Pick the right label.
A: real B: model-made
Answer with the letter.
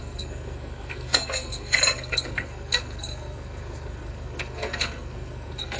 B